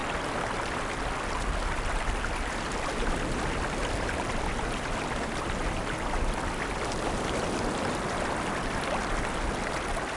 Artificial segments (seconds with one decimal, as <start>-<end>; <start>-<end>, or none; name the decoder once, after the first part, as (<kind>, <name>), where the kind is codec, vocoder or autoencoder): none